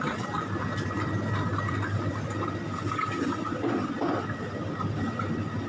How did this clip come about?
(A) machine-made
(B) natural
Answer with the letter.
B